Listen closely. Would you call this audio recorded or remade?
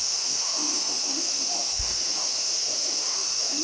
remade